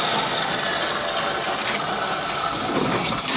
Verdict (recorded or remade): recorded